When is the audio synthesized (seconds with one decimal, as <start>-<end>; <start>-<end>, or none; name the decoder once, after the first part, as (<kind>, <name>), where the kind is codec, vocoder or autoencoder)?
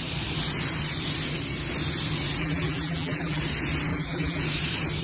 2.4-3.4 (vocoder, BigVGAN v2); 3.9-4.4